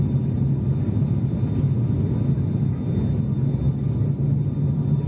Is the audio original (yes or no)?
yes